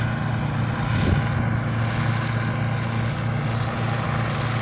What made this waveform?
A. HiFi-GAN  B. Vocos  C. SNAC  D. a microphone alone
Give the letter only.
D